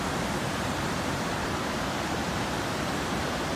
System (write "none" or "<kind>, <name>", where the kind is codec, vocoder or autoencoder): vocoder, BigVGAN v2